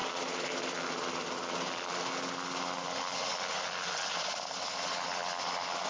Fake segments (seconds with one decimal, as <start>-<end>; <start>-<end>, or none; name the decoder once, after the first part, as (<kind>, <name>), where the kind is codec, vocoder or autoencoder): none